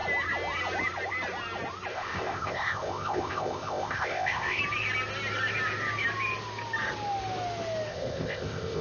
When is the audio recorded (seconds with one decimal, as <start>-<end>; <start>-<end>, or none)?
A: 0.0-1.9; 4.6-7.9